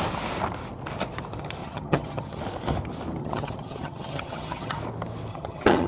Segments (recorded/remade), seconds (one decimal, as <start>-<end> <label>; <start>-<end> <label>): 0.0-1.6 recorded; 1.6-2.4 remade; 2.4-3.2 recorded; 3.2-4.8 remade; 4.8-5.3 recorded; 5.3-5.9 remade